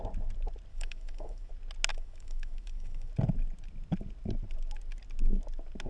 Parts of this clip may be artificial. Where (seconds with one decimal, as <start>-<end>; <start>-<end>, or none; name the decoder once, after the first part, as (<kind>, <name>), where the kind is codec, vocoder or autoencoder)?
0.7-1.5 (autoencoder, DAC-VAE); 1.9-3.1